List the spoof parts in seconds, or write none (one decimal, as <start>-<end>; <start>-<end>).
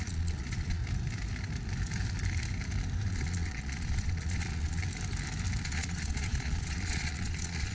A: 0.0-0.8; 3.1-4.8; 5.6-7.7